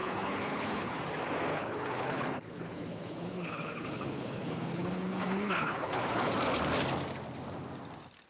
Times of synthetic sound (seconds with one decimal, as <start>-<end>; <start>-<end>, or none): 0.0-1.0; 1.5-6.3